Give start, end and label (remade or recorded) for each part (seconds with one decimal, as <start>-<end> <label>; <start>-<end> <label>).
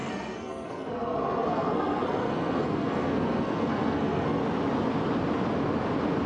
0.0-4.4 remade; 4.4-6.3 recorded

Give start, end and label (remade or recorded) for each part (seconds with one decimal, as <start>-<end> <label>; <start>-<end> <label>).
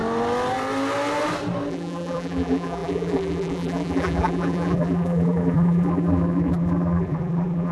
0.0-1.7 recorded; 1.7-7.7 remade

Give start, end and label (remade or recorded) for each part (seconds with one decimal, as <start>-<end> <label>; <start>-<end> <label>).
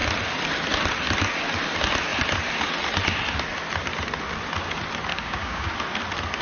0.0-5.1 recorded; 5.1-5.7 remade; 5.7-6.4 recorded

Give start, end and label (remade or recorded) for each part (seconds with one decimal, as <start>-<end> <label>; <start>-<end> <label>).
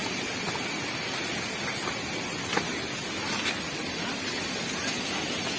0.0-0.7 recorded; 0.7-5.6 remade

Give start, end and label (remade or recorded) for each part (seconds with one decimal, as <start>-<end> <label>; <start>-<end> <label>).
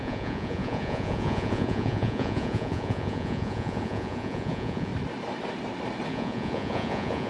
0.0-4.9 remade; 4.9-6.1 recorded; 6.1-7.3 remade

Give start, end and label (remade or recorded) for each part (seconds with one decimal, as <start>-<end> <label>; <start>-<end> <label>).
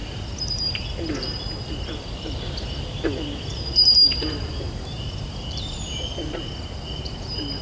0.0-0.8 remade; 0.8-4.1 recorded; 4.1-6.5 remade; 6.5-7.6 recorded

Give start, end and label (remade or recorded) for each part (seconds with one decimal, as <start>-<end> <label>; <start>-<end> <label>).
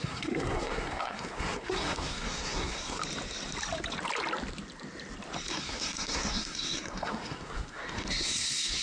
0.0-3.0 remade; 3.0-5.5 recorded; 5.5-8.8 remade